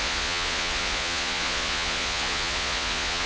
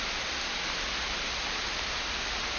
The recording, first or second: second